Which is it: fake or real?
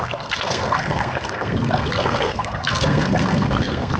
fake